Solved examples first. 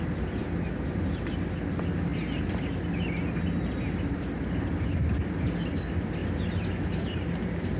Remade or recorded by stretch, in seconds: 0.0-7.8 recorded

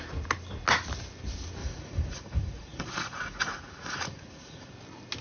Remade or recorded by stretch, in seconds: 0.0-1.6 recorded; 1.6-4.7 remade; 4.7-5.2 recorded